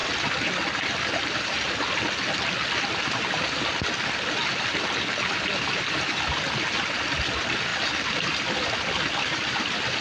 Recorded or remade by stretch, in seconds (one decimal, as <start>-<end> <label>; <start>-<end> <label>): 0.0-7.7 recorded; 7.7-10.0 remade

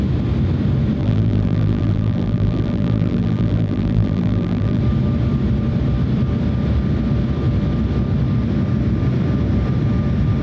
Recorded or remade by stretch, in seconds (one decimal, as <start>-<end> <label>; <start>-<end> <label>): 0.0-1.0 recorded; 1.0-4.8 remade; 4.8-10.4 recorded